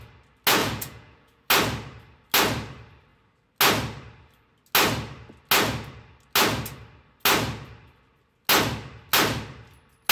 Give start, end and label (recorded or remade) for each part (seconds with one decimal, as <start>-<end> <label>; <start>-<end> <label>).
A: 0.0-0.6 recorded; 0.6-1.5 remade; 1.5-10.1 recorded